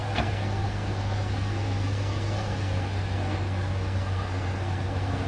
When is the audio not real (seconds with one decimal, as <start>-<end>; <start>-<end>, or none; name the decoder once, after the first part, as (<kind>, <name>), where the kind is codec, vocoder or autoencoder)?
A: 0.0-5.3 (codec, SNAC)